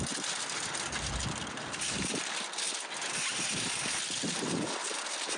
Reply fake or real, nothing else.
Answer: real